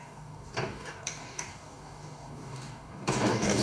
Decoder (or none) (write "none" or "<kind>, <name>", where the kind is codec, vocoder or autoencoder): codec, DAC